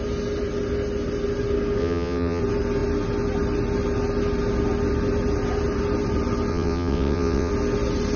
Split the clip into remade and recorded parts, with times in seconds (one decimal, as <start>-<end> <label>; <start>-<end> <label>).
0.0-1.8 recorded; 1.8-2.4 remade; 2.4-6.5 recorded; 6.5-7.5 remade; 7.5-8.2 recorded